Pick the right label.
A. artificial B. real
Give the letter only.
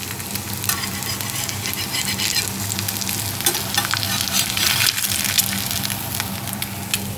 B